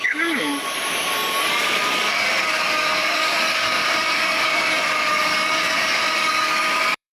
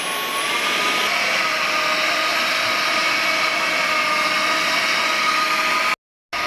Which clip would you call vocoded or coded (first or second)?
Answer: first